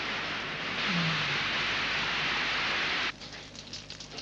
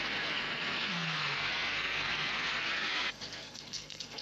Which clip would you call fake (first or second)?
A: second